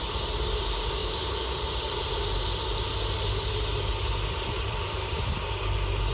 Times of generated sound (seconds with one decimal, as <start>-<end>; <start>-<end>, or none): none